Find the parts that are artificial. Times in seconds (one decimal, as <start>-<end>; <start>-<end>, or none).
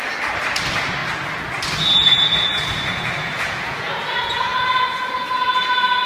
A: 2.0-6.1